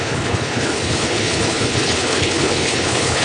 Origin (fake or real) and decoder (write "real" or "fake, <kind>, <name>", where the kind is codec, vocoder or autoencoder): fake, codec, HILCodec